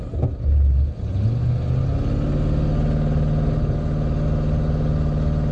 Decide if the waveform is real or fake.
real